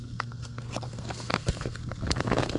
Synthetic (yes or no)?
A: yes